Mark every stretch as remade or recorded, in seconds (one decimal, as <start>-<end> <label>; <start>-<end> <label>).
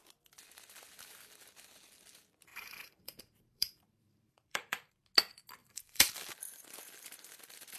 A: 0.0-2.5 recorded; 2.5-4.9 remade; 4.9-5.6 recorded; 5.6-6.1 remade; 6.1-7.8 recorded